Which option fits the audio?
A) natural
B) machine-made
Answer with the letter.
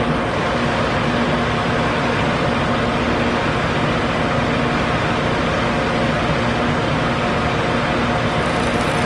A